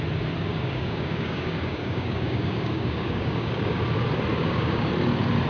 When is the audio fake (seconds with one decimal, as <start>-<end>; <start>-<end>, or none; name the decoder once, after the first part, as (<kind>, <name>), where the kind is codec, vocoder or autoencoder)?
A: 0.5-3.8 (codec, DAC); 4.3-4.9